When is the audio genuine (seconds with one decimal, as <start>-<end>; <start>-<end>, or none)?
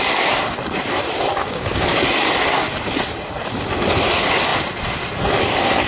0.0-1.3; 1.9-5.9